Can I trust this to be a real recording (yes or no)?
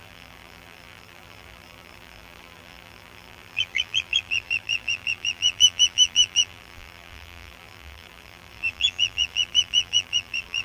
no